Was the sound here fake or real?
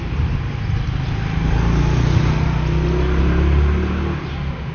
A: real